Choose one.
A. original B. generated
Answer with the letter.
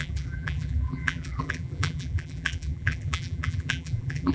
B